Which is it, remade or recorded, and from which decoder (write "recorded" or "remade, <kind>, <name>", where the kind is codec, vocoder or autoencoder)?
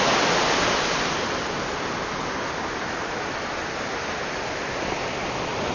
recorded